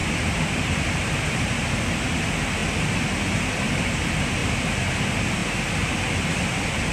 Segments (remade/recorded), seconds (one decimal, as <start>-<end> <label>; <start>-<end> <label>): 0.0-1.7 remade; 1.7-6.9 recorded